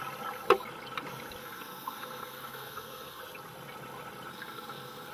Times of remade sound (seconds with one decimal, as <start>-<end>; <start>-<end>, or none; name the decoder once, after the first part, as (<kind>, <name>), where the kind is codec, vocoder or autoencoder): 1.4-3.2 (codec, SNAC); 4.3-5.1